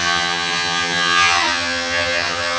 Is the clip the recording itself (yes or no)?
no